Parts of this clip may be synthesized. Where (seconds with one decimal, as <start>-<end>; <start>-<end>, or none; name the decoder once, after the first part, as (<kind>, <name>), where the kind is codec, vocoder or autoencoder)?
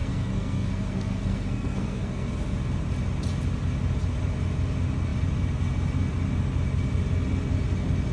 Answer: 0.0-2.3 (codec, SNAC)